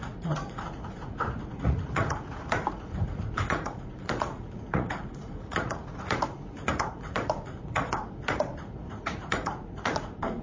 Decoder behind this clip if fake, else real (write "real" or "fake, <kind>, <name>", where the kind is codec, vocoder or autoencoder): fake, vocoder, Vocos